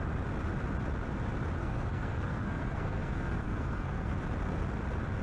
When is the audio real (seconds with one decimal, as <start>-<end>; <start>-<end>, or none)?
0.0-1.6; 4.1-5.2